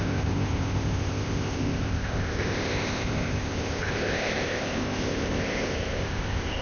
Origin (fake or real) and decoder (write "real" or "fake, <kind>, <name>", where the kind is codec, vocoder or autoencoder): fake, codec, ZipCodec